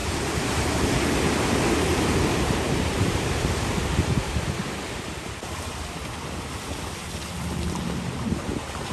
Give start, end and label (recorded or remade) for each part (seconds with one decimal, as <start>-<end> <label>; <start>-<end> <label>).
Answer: 0.0-0.6 remade; 0.6-1.9 recorded; 1.9-5.4 remade; 5.4-8.9 recorded